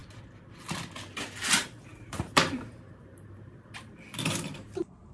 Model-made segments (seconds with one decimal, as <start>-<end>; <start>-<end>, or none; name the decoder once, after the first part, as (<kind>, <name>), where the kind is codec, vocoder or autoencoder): 1.4-5.1 (vocoder, BigVGAN v2)